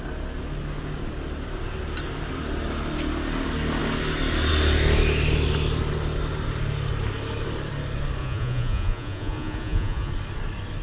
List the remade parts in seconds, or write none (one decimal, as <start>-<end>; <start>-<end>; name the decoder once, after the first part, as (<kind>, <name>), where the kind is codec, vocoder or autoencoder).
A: 8.2-10.1 (vocoder, Vocos)